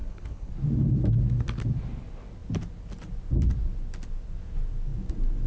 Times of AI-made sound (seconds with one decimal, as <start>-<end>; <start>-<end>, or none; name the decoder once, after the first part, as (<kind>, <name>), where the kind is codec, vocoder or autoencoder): 0.0-0.5 (codec, HILCodec)